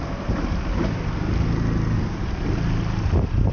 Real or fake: real